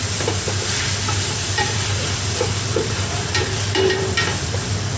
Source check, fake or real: fake